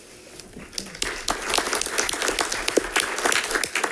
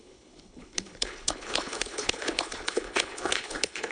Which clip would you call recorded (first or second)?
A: first